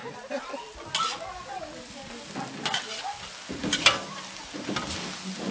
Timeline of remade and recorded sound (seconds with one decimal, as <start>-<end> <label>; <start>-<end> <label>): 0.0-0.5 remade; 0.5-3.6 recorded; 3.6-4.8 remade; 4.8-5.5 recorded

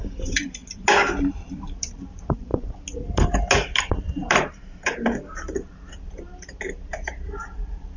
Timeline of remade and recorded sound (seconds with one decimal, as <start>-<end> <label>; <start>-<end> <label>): 0.0-0.6 remade; 0.6-1.3 recorded; 1.3-2.5 remade; 2.5-4.3 recorded; 4.3-8.0 remade

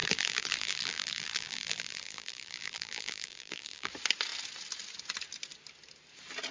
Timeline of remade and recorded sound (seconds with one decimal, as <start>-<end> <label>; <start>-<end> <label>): 0.0-3.9 remade; 3.9-6.5 recorded

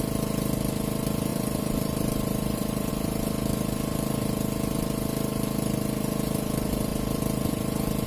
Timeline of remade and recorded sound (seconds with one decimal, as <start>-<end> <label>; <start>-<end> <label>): 0.0-1.3 recorded; 1.3-2.9 remade; 2.9-8.1 recorded

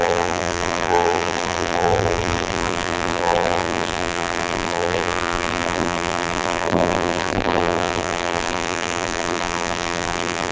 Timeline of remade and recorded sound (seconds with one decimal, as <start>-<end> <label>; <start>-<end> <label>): 0.0-10.5 remade